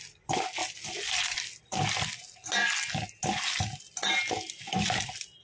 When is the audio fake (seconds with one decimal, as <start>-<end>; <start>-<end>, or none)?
0.6-1.8